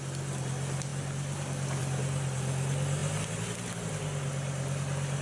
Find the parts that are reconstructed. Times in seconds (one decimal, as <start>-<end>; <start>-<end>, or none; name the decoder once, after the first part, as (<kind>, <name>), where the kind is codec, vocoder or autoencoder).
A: none